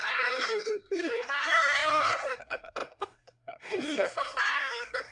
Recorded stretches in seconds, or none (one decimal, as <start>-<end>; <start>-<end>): none